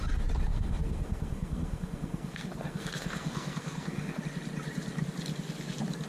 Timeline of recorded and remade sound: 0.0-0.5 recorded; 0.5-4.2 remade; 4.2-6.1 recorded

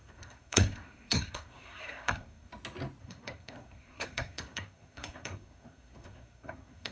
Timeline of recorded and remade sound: 0.0-2.5 remade; 2.5-3.0 recorded; 3.0-6.9 remade

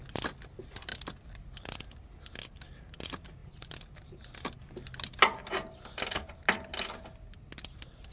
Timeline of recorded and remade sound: 0.0-8.1 recorded

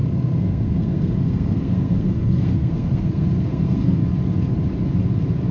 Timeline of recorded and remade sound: 0.0-4.0 remade; 4.0-5.5 recorded

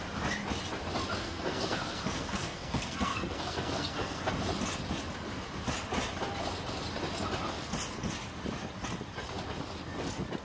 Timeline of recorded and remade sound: 0.0-1.2 recorded; 1.2-4.3 remade; 4.3-10.4 recorded

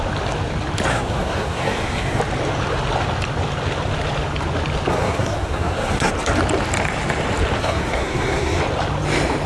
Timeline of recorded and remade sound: 0.0-0.9 recorded; 0.9-2.2 remade; 2.2-4.9 recorded; 4.9-6.1 remade; 6.1-7.6 recorded; 7.6-8.6 remade; 8.6-9.5 recorded

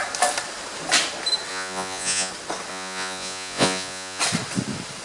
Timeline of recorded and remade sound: 0.0-1.5 recorded; 1.5-2.3 remade; 2.3-2.7 recorded; 2.7-4.2 remade; 4.2-5.0 recorded

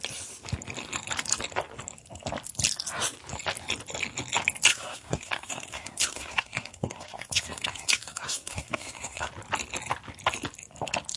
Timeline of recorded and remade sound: 0.0-4.7 recorded; 4.7-9.3 remade; 9.3-11.2 recorded